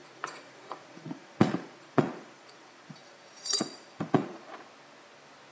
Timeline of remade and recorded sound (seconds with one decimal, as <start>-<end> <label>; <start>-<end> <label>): 0.0-4.5 remade; 4.5-5.5 recorded